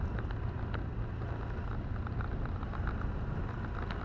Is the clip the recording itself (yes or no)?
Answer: yes